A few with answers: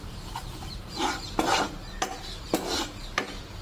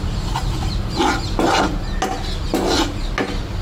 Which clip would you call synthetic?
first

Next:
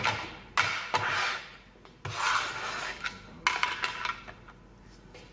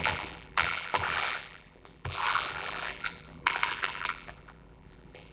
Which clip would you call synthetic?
second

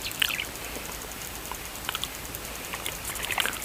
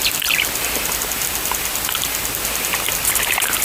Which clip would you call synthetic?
first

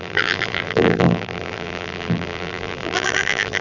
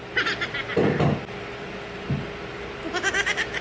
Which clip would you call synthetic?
first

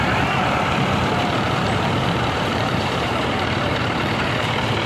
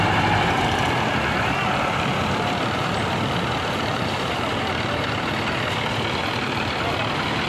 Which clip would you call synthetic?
first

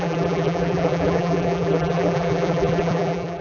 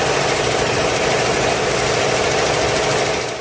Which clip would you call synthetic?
first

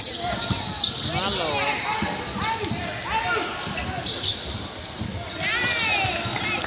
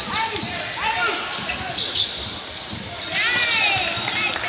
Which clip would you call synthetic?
second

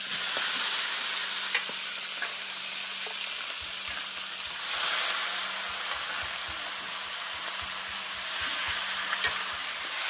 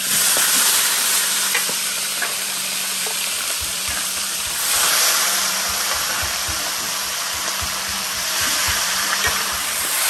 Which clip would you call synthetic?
second